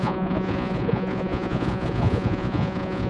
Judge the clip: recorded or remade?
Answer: remade